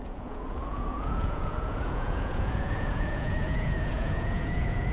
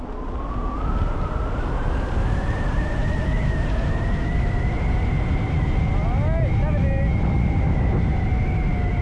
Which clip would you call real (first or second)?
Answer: second